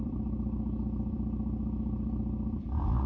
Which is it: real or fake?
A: fake